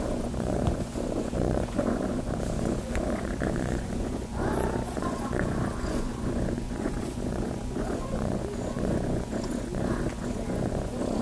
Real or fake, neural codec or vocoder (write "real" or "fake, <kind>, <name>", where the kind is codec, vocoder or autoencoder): fake, vocoder, Vocos